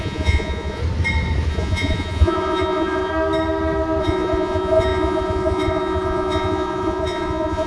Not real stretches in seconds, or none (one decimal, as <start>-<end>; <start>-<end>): 0.0-0.8; 1.5-3.1; 4.0-7.7